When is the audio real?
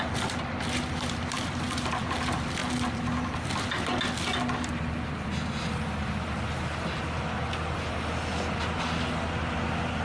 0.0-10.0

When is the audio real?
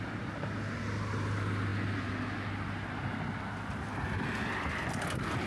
0.0-5.5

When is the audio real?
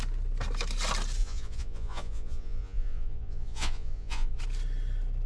0.0-1.2; 4.4-5.3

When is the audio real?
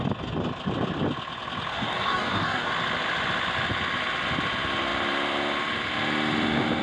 0.0-1.7; 2.7-6.8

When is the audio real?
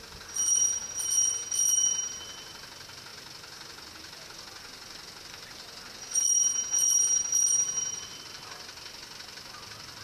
0.0-10.0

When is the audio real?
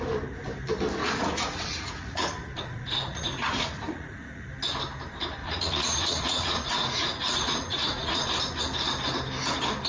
0.0-1.0; 4.5-5.4; 8.6-9.9